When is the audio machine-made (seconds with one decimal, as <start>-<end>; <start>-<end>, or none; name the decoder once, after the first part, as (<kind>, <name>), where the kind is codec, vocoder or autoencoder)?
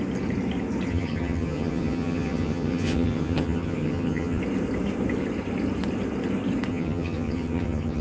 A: 0.9-4.4 (vocoder, HiFi-GAN); 6.7-8.0